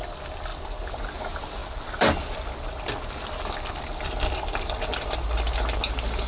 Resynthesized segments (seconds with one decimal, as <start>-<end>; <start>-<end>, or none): 0.5-1.0; 1.6-5.4